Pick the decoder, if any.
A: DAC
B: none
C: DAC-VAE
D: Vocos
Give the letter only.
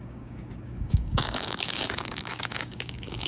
A